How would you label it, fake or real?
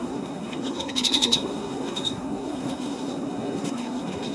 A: fake